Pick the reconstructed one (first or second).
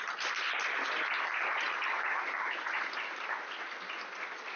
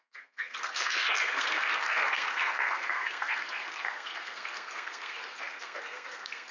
second